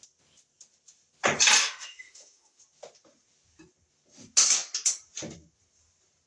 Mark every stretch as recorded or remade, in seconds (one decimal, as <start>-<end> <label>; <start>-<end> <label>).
0.0-1.6 recorded; 1.6-2.6 remade; 2.6-6.3 recorded